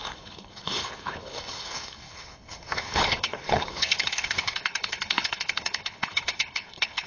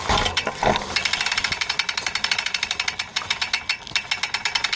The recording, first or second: second